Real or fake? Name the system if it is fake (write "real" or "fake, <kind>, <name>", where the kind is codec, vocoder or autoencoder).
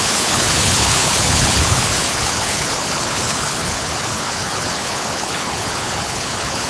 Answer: fake, codec, HILCodec